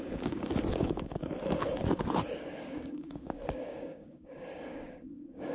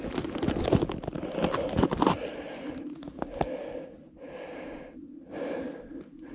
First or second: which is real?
second